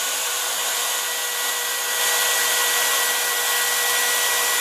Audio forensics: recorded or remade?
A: recorded